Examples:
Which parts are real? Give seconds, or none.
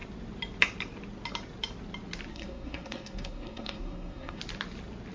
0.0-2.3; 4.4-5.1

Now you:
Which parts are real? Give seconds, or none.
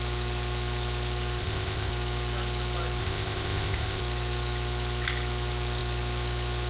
0.0-1.4; 1.9-3.0; 4.0-6.7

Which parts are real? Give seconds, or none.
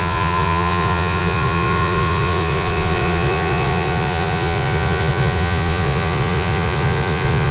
none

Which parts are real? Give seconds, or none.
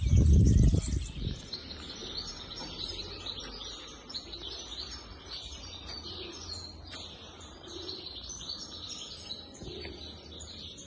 0.0-10.9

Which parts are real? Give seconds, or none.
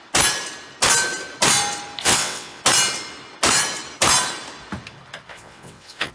0.0-2.0; 2.6-5.3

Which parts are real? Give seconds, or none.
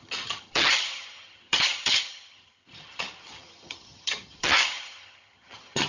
none